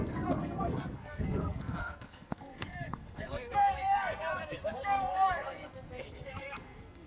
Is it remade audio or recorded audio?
remade